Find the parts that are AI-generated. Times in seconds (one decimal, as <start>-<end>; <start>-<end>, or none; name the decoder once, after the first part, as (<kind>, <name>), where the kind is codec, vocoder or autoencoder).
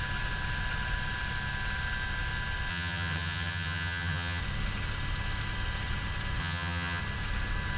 2.7-4.4 (vocoder, HiFi-GAN); 6.4-7.0